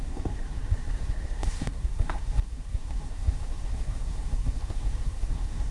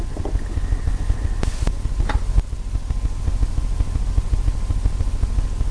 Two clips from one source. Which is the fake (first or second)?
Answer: first